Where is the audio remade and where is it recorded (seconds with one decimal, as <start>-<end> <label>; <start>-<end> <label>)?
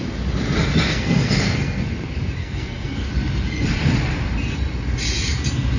0.0-0.9 recorded; 0.9-1.9 remade; 1.9-2.4 recorded; 2.4-3.1 remade; 3.1-5.8 recorded